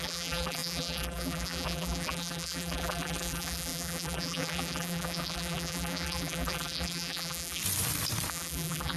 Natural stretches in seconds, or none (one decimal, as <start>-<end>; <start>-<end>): 7.6-8.3